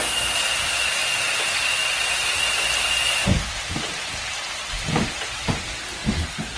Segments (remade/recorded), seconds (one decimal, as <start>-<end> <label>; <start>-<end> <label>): 0.0-6.6 recorded